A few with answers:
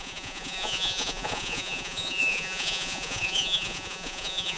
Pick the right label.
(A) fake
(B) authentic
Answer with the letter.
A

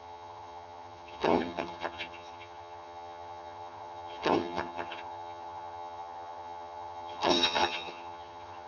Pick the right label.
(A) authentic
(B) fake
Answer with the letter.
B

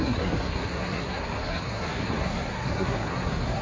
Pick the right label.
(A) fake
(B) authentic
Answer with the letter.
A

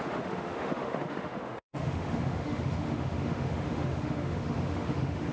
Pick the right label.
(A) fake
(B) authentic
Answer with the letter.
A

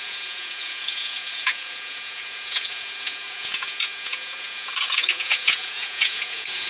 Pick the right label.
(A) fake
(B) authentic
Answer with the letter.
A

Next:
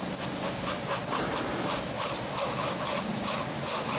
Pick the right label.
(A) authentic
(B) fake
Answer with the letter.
A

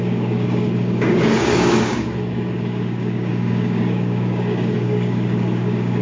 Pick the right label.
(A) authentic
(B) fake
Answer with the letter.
B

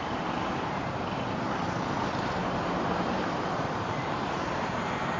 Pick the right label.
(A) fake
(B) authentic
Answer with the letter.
A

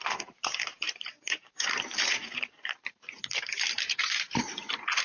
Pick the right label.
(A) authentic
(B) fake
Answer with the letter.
B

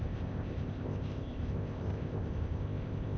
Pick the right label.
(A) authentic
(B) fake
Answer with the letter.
B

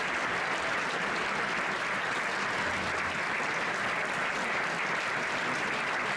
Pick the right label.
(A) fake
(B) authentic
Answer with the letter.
B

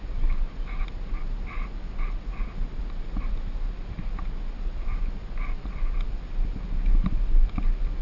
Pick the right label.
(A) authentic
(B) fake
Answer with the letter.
A